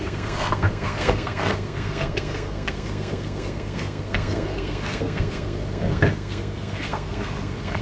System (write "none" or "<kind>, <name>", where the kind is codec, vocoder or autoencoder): codec, SNAC